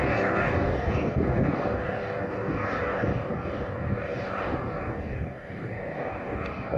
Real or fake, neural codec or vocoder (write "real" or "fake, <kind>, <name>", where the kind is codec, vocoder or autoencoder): fake, codec, DAC